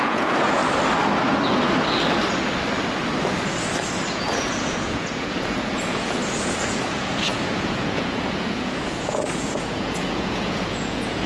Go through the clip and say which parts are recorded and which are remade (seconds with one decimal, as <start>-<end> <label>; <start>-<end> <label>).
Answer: 0.0-0.6 remade; 0.6-4.1 recorded; 4.1-11.3 remade